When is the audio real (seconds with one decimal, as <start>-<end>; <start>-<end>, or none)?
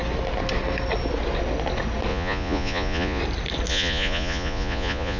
0.0-2.1; 3.2-3.7